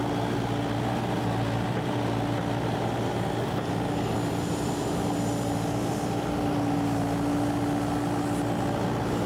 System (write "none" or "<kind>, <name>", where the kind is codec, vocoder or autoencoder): none